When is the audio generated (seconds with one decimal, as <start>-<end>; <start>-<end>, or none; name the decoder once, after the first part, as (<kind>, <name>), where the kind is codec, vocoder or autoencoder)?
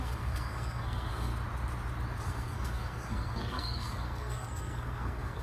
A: 0.0-1.3 (codec, SNAC); 2.2-5.4